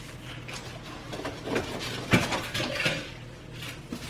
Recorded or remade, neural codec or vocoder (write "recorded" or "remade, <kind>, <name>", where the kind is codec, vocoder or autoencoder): recorded